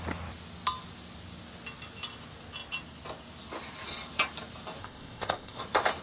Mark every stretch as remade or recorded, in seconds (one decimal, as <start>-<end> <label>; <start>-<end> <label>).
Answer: 0.0-4.8 recorded; 4.8-5.6 remade; 5.6-6.0 recorded